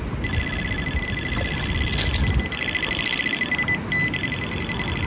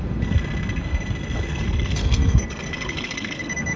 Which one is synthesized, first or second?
second